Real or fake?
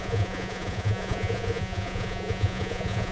fake